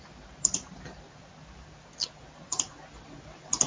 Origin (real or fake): real